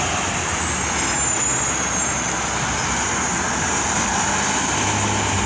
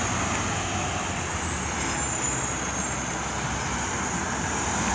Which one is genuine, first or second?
first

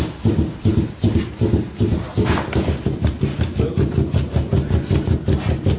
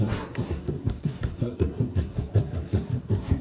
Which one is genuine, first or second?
first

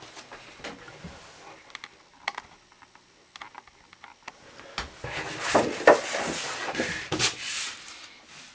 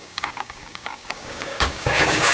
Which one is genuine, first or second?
first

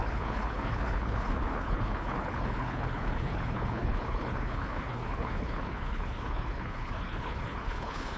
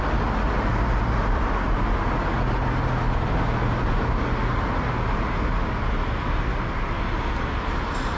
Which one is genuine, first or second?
second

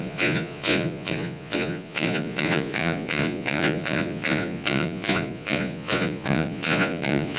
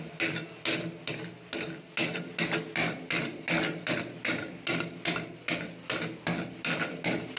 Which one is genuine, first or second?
second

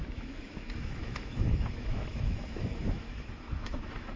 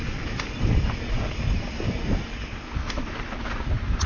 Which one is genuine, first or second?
second